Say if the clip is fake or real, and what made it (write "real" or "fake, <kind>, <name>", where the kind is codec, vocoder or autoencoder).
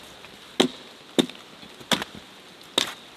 real